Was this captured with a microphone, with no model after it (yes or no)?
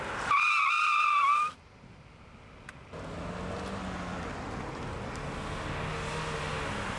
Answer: yes